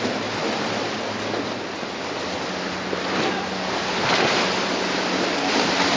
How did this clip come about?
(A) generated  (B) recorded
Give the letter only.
B